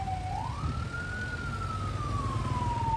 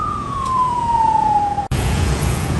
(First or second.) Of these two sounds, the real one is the first